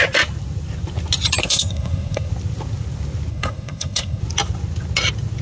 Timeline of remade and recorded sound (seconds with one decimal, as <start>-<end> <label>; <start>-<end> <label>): 0.0-1.4 recorded; 1.4-2.3 remade; 2.3-3.3 recorded; 3.3-4.2 remade; 4.2-5.4 recorded